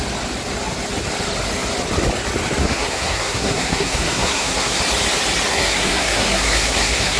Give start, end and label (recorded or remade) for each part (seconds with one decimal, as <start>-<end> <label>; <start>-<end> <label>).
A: 0.0-2.6 recorded; 2.6-4.8 remade; 4.8-5.5 recorded; 5.5-7.2 remade